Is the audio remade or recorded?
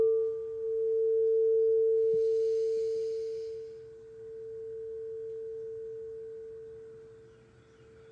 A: recorded